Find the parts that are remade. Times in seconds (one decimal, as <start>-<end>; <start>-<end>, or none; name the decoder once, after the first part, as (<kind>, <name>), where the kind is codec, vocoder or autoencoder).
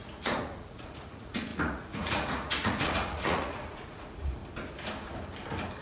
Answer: 0.0-4.4 (vocoder, Vocos)